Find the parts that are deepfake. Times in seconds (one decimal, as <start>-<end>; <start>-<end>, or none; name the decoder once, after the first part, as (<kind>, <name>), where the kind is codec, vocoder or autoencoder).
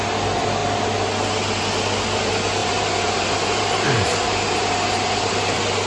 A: 2.6-5.4 (vocoder, BigVGAN v2)